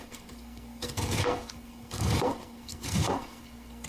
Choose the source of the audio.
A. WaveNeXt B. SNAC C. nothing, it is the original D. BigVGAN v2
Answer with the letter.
B